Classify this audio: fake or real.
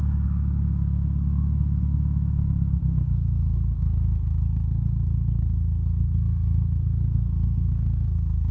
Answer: fake